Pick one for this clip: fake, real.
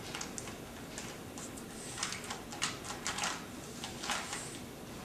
real